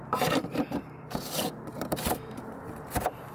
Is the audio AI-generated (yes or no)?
yes